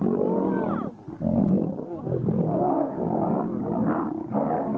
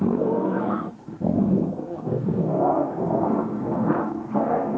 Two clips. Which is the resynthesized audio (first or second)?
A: second